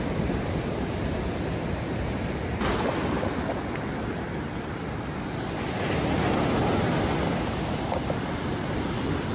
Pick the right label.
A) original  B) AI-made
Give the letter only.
A